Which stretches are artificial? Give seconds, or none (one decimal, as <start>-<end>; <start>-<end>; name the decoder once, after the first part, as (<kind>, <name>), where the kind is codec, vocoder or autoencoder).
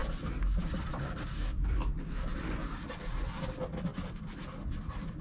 0.0-3.0 (vocoder, BigVGAN v2)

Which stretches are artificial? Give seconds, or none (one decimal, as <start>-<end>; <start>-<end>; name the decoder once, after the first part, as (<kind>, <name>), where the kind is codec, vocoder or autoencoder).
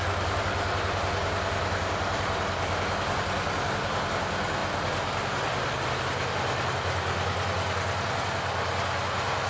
none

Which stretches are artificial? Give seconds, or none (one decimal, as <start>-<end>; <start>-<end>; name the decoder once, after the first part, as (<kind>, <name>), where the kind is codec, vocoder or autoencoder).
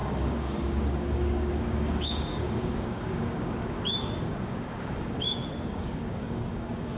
0.0-7.0 (codec, DAC)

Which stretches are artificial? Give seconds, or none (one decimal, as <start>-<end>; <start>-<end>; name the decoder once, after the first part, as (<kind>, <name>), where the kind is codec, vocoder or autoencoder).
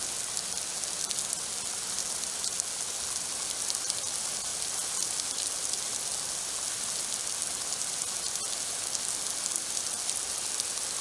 none